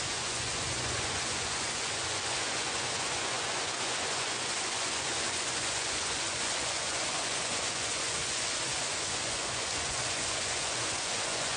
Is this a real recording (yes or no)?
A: no